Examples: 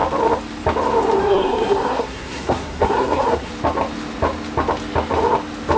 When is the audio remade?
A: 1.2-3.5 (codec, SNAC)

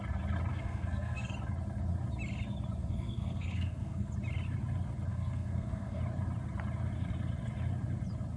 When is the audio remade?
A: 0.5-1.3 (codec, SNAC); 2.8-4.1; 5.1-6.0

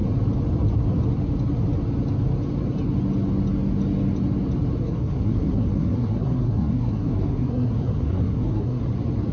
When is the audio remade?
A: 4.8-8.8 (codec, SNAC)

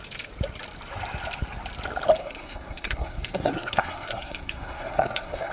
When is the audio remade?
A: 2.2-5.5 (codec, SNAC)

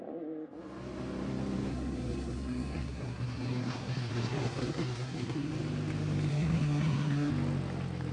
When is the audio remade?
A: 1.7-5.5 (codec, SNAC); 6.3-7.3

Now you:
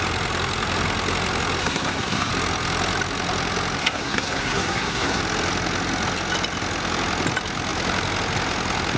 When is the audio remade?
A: 1.6-2.3 (codec, SNAC); 3.8-5.2

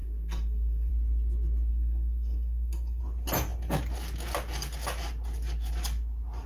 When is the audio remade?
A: 0.0-0.9 (codec, SNAC); 1.7-3.0

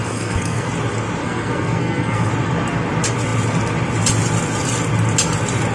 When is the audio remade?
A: 0.0-0.7 (codec, SNAC); 1.2-2.3